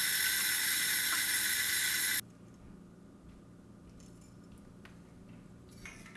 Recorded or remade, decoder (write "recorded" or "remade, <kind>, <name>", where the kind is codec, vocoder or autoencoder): recorded